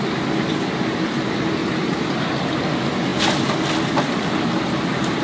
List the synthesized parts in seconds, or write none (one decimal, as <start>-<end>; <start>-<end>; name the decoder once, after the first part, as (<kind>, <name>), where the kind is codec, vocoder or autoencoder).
1.6-2.7 (vocoder, BigVGAN v2)